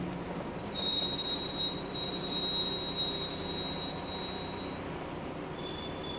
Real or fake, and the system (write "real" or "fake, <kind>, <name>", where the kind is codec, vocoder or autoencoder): real